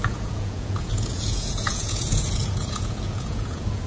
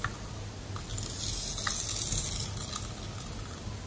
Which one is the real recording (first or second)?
second